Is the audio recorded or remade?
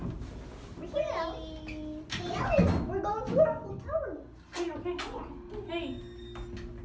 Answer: recorded